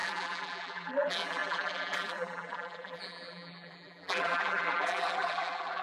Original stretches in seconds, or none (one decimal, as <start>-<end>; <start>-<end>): none